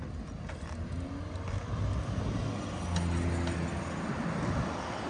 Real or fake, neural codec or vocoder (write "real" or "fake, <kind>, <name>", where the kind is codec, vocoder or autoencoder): real